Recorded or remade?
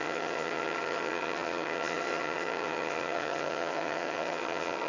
remade